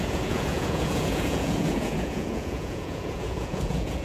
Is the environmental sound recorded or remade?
remade